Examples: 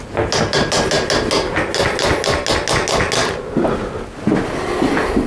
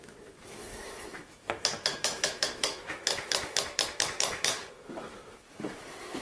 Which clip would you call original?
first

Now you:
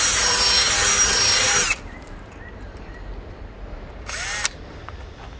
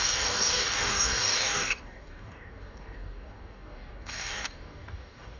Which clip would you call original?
first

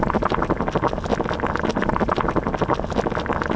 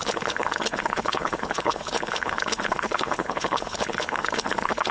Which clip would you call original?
first